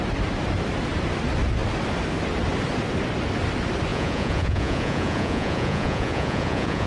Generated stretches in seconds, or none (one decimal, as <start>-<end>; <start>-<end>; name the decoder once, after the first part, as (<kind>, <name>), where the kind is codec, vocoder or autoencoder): 3.9-6.9 (vocoder, Vocos)